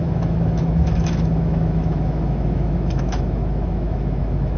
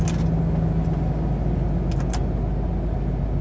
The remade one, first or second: first